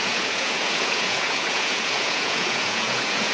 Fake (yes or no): yes